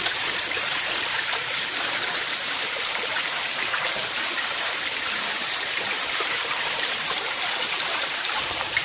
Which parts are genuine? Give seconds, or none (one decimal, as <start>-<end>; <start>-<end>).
none